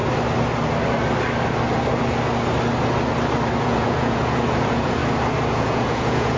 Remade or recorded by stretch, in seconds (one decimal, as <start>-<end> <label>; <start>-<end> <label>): 0.0-3.6 recorded; 3.6-5.0 remade; 5.0-5.5 recorded; 5.5-6.4 remade